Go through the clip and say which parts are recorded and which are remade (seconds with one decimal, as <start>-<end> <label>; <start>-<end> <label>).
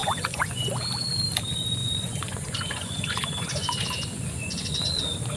0.0-0.7 remade; 0.7-1.8 recorded; 1.8-5.0 remade; 5.0-5.4 recorded